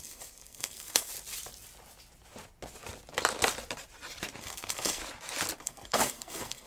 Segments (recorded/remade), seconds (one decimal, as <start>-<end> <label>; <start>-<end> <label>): 0.0-1.1 remade; 1.1-4.4 recorded; 4.4-5.0 remade; 5.0-5.6 recorded; 5.6-6.7 remade